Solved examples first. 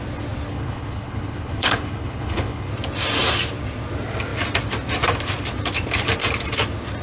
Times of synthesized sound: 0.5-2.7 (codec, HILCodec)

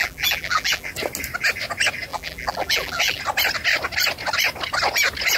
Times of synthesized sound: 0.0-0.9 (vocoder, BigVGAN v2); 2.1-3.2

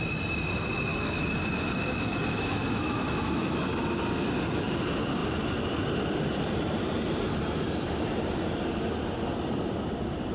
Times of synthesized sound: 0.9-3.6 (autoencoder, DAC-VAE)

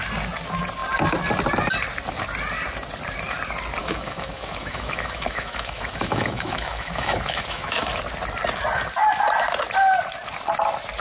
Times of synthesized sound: 3.8-7.9 (autoencoder, DAC-VAE)

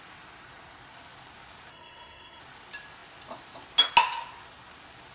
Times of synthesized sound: 1.7-2.4 (codec, SNAC)

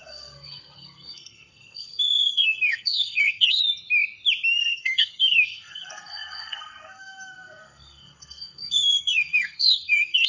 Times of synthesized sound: 0.0-3.6 (codec, SNAC); 4.6-10.3

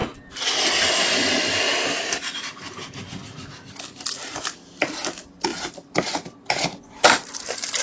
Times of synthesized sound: none